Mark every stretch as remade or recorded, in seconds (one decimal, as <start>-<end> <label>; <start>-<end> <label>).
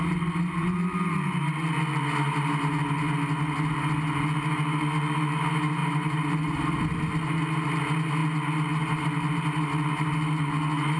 0.0-5.8 recorded; 5.8-6.8 remade; 6.8-11.0 recorded